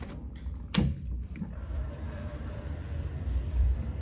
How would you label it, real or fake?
fake